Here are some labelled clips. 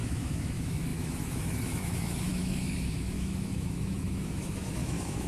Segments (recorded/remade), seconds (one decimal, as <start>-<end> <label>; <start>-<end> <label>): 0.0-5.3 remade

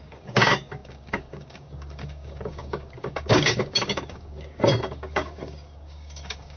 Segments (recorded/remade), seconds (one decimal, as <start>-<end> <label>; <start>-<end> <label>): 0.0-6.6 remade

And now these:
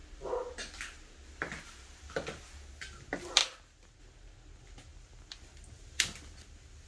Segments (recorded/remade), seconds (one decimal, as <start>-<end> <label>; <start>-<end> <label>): 0.0-6.9 recorded

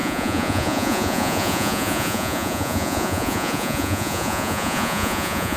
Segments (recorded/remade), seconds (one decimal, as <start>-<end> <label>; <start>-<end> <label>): 0.0-5.6 remade

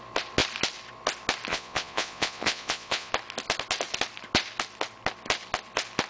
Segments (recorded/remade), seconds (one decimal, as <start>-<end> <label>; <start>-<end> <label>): 0.0-1.5 recorded; 1.5-3.1 remade; 3.1-6.1 recorded